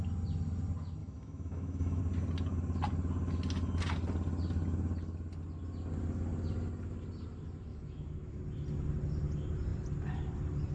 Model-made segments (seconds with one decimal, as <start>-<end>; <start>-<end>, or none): 1.0-2.0; 7.7-8.4